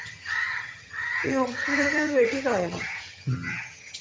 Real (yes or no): no